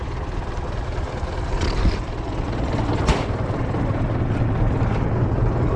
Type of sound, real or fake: fake